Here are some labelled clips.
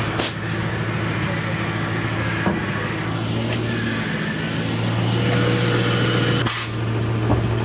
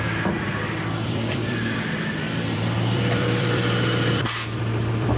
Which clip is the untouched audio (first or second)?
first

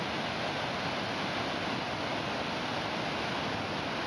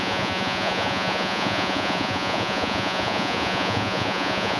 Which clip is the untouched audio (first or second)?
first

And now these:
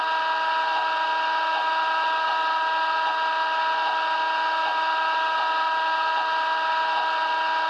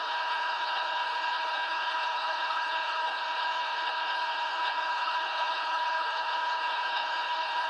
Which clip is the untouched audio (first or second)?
first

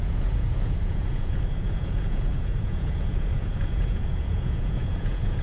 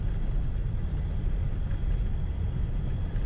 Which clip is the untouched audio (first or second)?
second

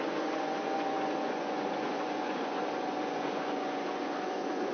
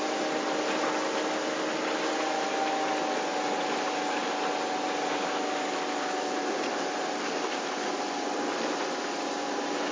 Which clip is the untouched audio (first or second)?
second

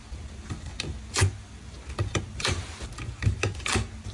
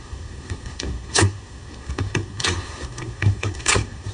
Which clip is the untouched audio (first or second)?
first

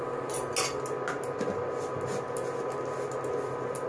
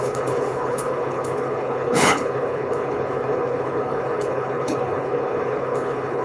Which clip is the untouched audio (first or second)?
first